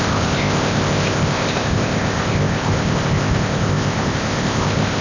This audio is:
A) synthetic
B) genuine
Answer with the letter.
A